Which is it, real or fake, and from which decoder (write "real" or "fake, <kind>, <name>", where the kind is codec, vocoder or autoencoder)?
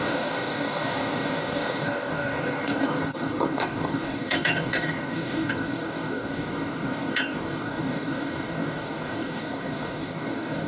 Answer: fake, codec, DAC